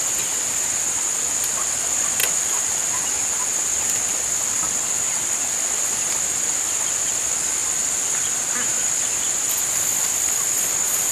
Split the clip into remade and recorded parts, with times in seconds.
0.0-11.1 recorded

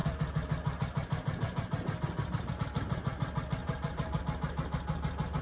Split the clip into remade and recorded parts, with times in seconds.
0.0-3.6 recorded; 3.6-4.2 remade; 4.2-5.4 recorded

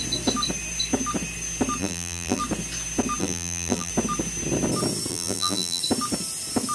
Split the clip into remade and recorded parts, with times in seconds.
0.0-1.8 recorded; 1.8-2.4 remade; 2.4-3.2 recorded; 3.2-3.9 remade; 3.9-5.1 recorded; 5.1-5.8 remade; 5.8-6.7 recorded

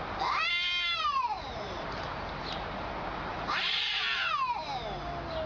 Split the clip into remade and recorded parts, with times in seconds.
0.0-0.9 recorded; 0.9-2.9 remade; 2.9-3.3 recorded; 3.3-4.1 remade; 4.1-5.5 recorded

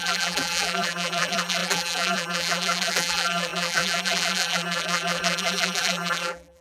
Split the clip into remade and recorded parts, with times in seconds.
0.0-6.6 remade

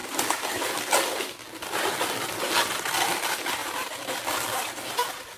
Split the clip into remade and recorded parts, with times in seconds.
0.0-5.4 recorded

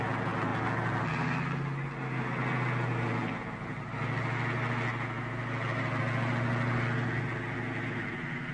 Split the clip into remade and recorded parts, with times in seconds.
0.0-8.5 recorded